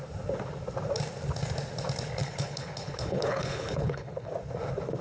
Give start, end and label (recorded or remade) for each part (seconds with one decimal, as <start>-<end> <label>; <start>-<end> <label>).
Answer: 0.0-2.2 recorded; 2.2-4.3 remade; 4.3-5.0 recorded